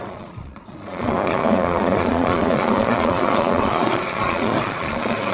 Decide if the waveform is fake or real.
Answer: fake